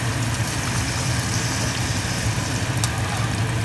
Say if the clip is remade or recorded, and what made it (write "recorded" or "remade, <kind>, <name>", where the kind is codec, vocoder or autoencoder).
recorded